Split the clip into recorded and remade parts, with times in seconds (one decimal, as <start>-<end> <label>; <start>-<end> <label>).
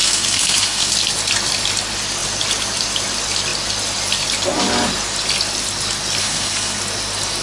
0.0-0.9 remade; 0.9-6.2 recorded; 6.2-6.8 remade; 6.8-7.4 recorded